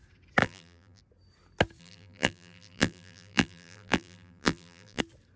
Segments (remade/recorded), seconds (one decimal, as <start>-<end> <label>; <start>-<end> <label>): 0.0-0.4 recorded; 0.4-1.0 remade; 1.0-1.8 recorded; 1.8-5.0 remade; 5.0-5.4 recorded